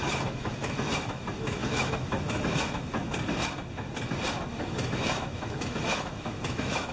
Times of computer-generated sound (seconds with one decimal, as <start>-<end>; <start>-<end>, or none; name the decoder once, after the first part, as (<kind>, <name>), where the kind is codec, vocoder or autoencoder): 0.0-3.0 (autoencoder, DAC-VAE); 4.5-6.9